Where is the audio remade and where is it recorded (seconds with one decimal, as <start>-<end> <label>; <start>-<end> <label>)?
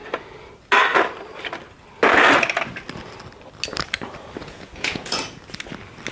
0.0-4.4 recorded; 4.4-5.2 remade; 5.2-6.1 recorded